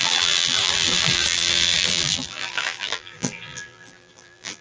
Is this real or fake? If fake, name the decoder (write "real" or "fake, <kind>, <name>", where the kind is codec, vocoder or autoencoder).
fake, vocoder, BigVGAN v2